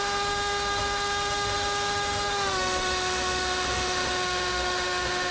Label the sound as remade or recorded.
remade